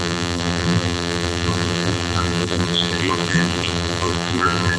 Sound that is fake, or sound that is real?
fake